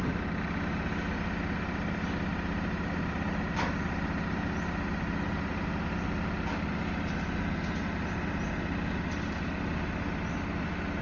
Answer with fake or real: real